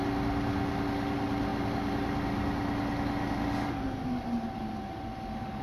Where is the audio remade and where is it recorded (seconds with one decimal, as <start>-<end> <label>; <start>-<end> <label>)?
0.0-5.6 recorded